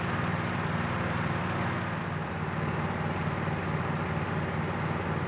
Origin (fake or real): real